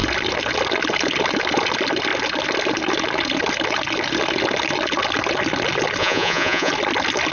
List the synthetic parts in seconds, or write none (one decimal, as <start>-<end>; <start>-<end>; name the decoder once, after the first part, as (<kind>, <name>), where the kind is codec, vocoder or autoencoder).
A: 6.0-6.7 (vocoder, Vocos)